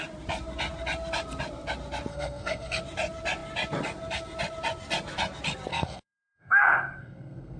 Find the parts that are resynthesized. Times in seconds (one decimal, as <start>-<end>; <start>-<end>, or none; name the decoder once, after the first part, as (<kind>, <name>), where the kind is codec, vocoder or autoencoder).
2.1-2.8 (codec, SNAC); 5.7-7.6